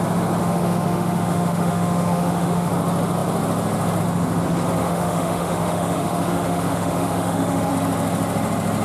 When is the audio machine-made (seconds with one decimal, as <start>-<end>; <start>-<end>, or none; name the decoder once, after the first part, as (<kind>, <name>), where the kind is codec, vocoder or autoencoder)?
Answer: 0.4-2.7 (autoencoder, DAC-VAE); 4.8-7.7